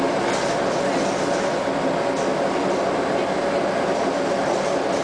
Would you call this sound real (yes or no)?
yes